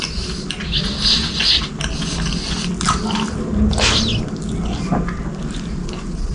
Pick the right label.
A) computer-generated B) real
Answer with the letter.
B